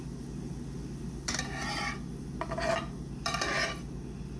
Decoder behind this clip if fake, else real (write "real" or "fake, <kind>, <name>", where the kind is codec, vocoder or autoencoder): real